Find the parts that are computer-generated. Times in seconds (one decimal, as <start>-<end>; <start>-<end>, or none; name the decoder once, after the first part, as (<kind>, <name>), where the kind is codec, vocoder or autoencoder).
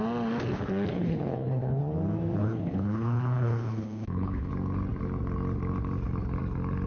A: 0.9-1.8 (codec, HILCodec); 2.4-4.5